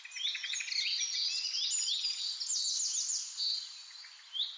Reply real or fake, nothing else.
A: real